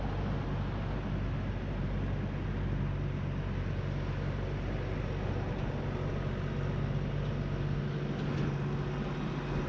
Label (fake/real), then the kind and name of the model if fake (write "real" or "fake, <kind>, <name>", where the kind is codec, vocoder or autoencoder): real